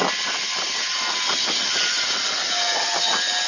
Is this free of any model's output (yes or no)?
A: yes